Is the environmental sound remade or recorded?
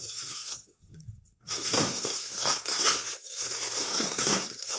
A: remade